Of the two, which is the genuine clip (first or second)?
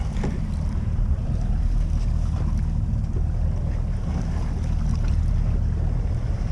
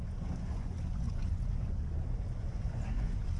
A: first